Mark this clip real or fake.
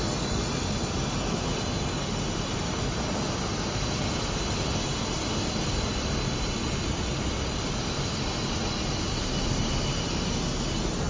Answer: real